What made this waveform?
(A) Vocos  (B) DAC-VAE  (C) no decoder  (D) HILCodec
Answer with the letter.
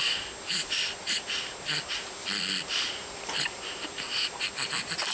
C